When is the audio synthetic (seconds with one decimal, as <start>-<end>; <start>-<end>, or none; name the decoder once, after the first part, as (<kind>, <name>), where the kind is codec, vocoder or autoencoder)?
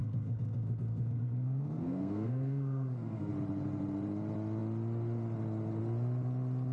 0.0-3.3 (codec, SNAC)